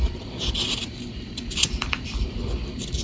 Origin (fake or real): fake